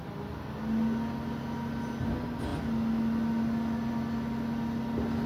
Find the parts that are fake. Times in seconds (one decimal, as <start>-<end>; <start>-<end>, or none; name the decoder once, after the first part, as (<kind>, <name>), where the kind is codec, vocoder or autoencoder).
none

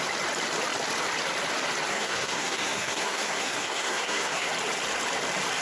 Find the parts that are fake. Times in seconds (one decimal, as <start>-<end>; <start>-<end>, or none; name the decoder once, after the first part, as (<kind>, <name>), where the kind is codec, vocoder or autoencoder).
1.9-4.5 (codec, SNAC)

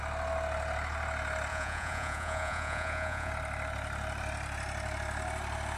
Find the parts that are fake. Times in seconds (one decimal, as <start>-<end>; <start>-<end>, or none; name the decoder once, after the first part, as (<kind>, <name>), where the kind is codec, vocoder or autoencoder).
1.5-3.3 (vocoder, Vocos)

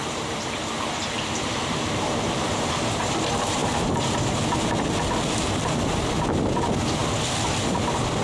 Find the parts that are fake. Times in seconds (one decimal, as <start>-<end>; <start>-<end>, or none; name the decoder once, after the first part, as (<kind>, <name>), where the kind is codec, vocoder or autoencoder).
0.0-3.0 (vocoder, BigVGAN v2); 3.6-4.8

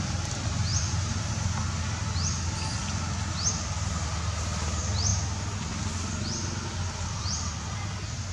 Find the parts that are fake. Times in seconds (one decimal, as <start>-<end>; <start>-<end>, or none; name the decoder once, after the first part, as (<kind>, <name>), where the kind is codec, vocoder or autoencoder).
0.7-1.3 (vocoder, BigVGAN v2)

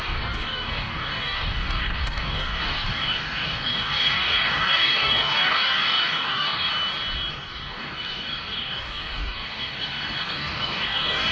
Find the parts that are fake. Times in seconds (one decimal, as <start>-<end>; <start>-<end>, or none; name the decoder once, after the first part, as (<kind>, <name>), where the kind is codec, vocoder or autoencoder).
0.0-6.7 (codec, DAC); 7.3-11.3

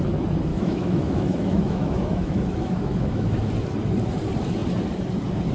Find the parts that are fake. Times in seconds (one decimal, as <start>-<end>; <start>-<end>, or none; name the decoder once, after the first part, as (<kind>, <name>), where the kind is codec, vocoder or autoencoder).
0.5-3.5 (autoencoder, DAC-VAE)